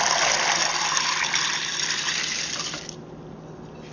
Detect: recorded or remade recorded